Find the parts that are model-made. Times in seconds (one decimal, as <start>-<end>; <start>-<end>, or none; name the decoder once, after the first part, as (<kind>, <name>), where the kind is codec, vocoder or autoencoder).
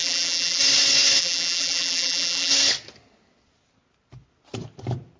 0.0-0.6 (vocoder, BigVGAN v2); 1.2-2.5